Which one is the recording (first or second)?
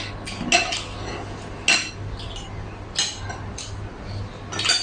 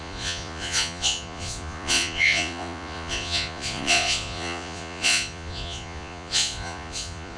first